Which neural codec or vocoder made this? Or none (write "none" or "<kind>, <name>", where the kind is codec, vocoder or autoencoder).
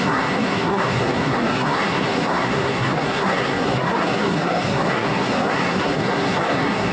codec, SNAC